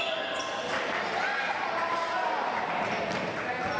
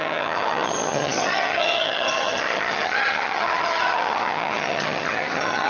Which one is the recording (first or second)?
first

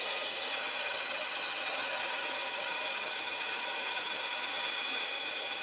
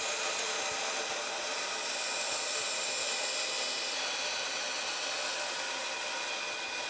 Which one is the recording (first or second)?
second